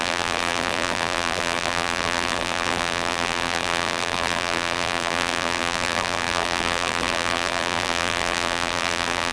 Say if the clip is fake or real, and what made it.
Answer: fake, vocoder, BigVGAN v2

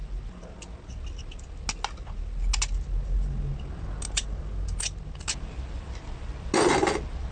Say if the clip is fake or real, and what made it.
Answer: real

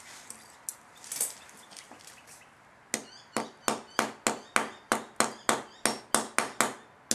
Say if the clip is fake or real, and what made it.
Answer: real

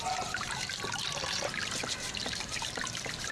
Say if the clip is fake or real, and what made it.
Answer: fake, vocoder, BigVGAN v2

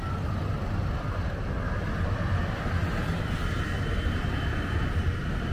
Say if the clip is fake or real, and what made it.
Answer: real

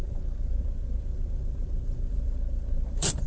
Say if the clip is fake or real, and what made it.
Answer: fake, vocoder, BigVGAN v2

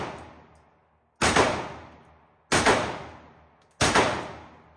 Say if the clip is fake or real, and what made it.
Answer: real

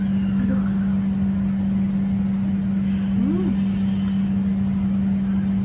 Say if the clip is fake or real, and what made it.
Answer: real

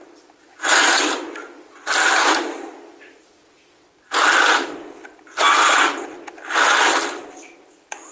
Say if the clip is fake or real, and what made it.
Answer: real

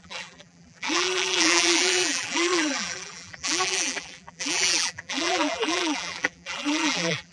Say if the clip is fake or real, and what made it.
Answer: fake, vocoder, BigVGAN v2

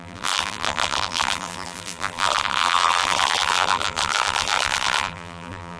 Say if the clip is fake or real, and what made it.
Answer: fake, vocoder, BigVGAN v2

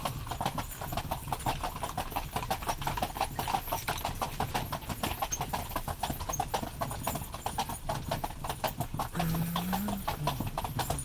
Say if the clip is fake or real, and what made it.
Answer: real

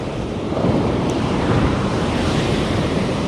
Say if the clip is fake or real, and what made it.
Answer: fake, vocoder, BigVGAN v2